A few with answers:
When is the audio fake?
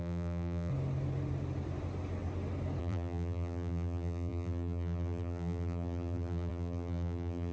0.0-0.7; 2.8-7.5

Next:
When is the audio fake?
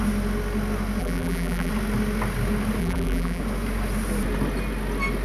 1.0-1.7; 2.8-3.4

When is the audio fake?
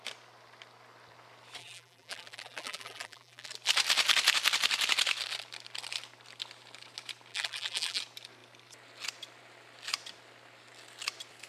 1.6-3.5; 7.3-8.0